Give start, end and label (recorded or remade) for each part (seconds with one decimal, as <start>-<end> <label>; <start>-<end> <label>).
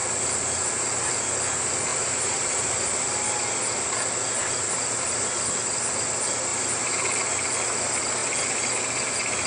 0.0-1.9 recorded; 1.9-2.6 remade; 2.6-6.5 recorded; 6.5-7.2 remade; 7.2-9.5 recorded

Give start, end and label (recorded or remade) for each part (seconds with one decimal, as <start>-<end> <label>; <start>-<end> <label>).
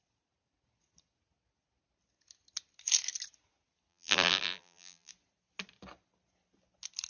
0.0-3.9 recorded; 3.9-5.1 remade; 5.1-7.1 recorded